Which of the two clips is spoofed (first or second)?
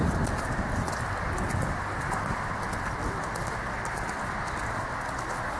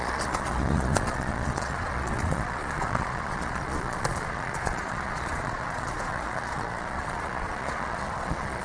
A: second